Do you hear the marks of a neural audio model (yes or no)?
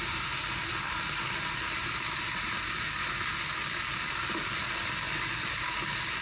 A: no